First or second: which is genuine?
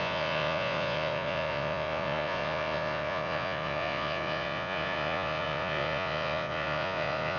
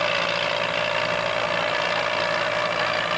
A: second